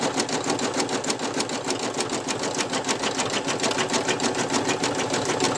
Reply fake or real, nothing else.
real